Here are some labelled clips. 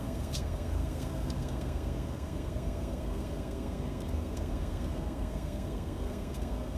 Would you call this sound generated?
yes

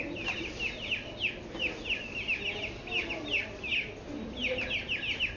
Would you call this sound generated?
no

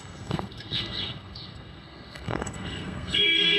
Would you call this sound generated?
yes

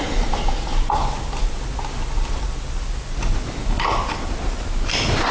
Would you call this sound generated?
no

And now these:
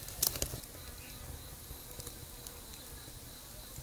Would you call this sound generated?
no